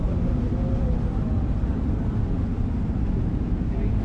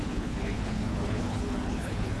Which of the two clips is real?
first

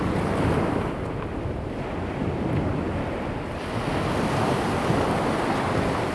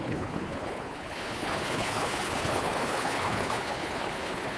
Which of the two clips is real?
first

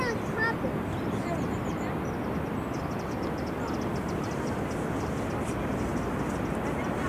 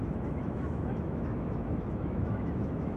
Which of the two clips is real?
first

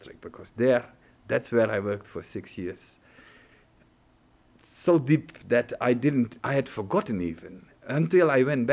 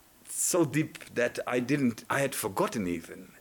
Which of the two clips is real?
first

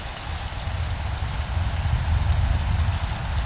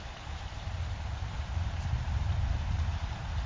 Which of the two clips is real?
first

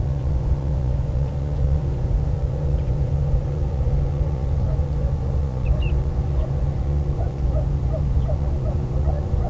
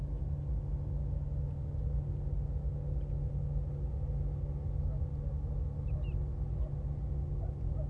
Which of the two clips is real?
second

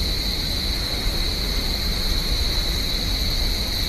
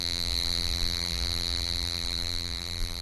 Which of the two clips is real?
first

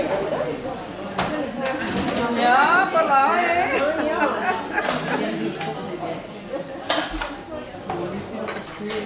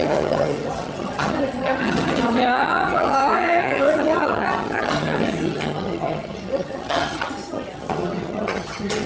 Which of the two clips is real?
first